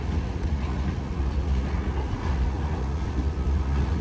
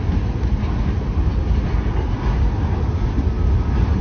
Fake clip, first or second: first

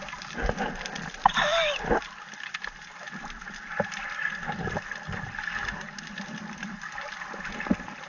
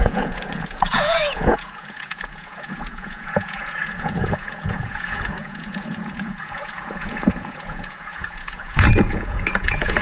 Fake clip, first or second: second